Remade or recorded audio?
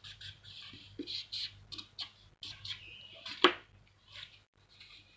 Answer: recorded